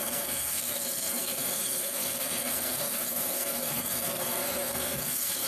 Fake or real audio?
fake